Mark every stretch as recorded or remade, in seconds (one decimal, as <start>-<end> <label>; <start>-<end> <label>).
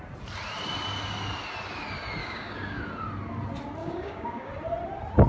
0.0-2.2 recorded; 2.2-2.8 remade; 2.8-3.8 recorded; 3.8-4.5 remade; 4.5-5.3 recorded